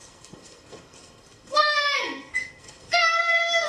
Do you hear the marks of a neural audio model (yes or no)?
yes